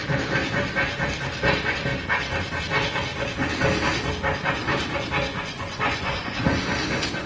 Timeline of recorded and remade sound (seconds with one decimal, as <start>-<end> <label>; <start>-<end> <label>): 0.0-5.3 recorded; 5.3-6.4 remade; 6.4-7.3 recorded